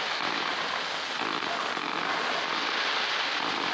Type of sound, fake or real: real